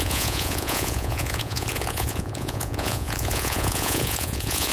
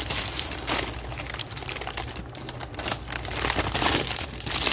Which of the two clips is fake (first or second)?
first